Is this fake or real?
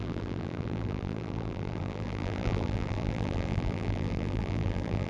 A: fake